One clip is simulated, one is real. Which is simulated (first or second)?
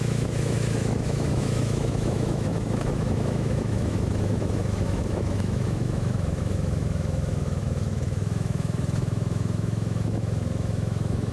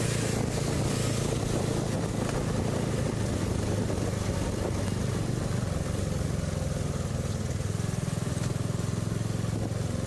first